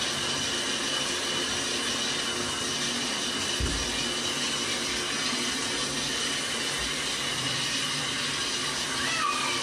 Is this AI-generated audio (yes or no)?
no